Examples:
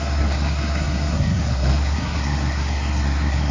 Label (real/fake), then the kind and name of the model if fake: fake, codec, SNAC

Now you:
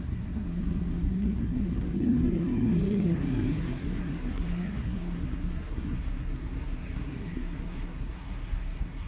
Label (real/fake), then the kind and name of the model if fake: fake, codec, SNAC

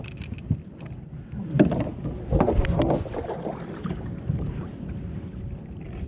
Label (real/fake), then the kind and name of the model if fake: real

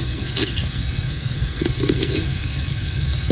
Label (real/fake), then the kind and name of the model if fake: fake, codec, SNAC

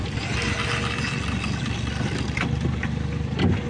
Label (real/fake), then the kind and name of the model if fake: real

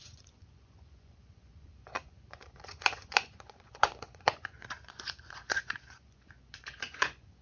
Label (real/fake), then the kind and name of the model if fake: fake, vocoder, Vocos